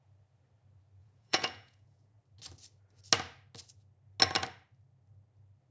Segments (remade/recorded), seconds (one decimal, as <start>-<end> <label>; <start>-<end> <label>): 0.0-1.0 recorded; 1.0-2.2 remade; 2.2-5.7 recorded